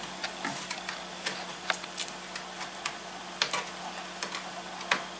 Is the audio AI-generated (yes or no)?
no